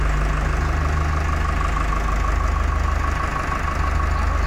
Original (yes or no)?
yes